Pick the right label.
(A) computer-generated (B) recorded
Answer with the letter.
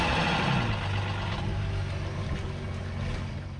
B